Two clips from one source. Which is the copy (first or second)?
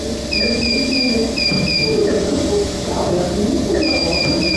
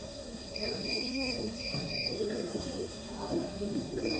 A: second